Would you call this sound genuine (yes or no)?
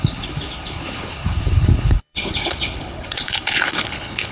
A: no